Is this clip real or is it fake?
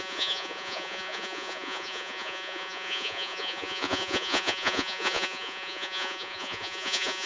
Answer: fake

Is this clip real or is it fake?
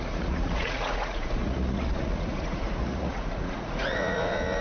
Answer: fake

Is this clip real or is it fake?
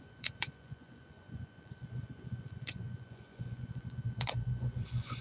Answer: fake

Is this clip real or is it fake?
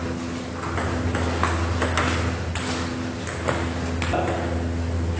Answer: real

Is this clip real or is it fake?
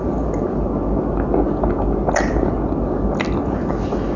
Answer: real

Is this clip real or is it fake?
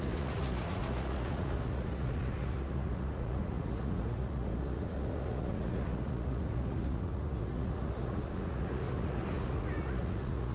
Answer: fake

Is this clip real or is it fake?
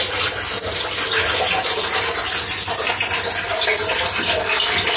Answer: real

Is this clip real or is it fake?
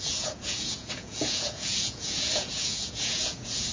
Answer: fake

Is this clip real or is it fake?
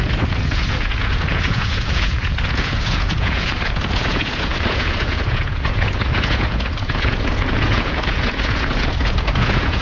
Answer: fake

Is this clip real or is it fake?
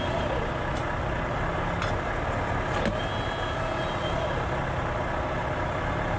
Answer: real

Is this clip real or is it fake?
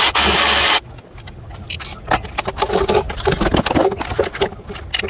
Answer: real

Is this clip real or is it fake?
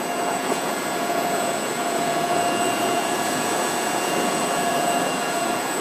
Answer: fake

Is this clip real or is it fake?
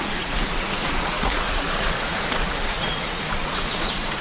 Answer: fake